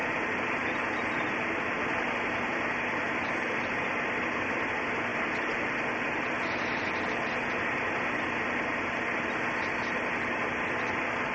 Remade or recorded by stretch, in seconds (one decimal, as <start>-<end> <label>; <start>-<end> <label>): 0.0-11.3 recorded

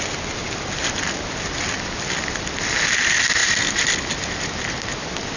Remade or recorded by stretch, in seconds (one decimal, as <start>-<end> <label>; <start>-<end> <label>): 0.0-5.4 recorded

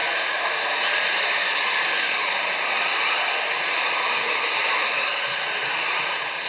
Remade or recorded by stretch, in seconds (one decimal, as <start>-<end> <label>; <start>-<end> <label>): 0.0-0.9 recorded; 0.9-1.4 remade; 1.4-4.1 recorded; 4.1-6.5 remade